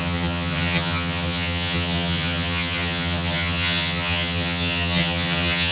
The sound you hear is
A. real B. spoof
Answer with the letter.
B